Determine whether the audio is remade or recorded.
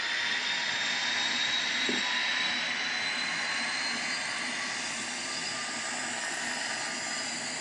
recorded